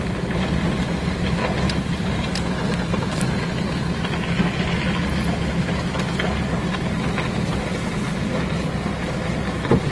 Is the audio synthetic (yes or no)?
no